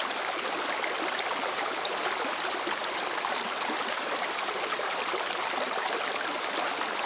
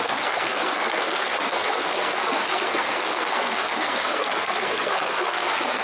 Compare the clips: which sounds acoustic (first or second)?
first